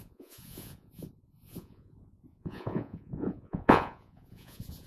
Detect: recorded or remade remade